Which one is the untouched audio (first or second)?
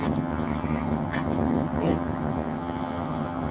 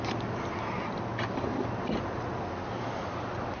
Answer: second